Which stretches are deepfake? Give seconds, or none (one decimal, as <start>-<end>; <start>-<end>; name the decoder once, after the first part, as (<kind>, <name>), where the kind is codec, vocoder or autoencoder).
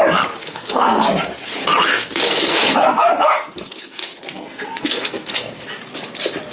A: 0.4-1.1 (codec, SNAC); 1.9-5.8